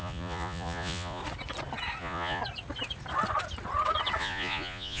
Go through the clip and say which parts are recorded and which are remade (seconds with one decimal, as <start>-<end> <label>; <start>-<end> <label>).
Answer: 0.0-1.2 remade; 1.2-2.0 recorded; 2.0-2.4 remade; 2.4-4.2 recorded; 4.2-5.0 remade